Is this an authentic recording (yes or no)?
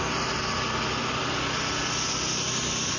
yes